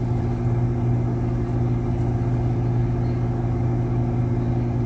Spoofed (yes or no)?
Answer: no